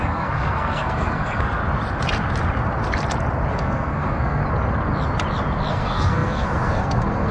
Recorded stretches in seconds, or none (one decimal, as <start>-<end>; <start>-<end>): 1.6-3.5; 4.4-5.7